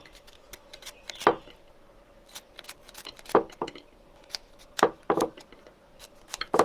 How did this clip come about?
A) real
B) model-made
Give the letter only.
A